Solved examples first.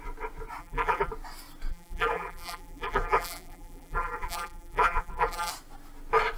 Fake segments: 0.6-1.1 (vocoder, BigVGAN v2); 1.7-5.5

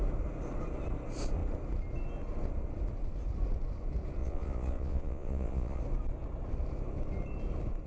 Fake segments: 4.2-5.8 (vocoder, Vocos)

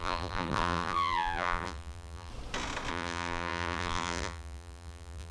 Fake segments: 0.0-2.3 (vocoder, BigVGAN v2); 2.9-5.3

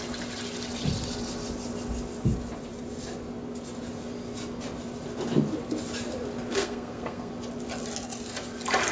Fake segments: 6.5-7.3 (codec, SNAC)

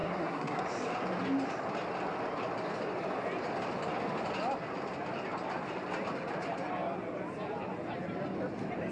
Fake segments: 0.0-0.6 (codec, SNAC)

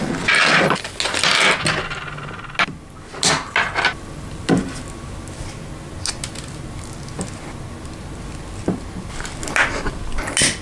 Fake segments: none

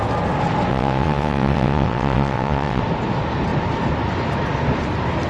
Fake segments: 0.7-2.8 (vocoder, WaveNeXt)